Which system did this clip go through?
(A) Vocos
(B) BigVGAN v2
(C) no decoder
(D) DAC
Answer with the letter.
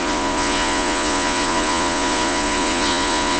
A